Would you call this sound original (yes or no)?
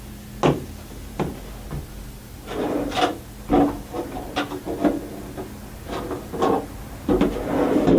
yes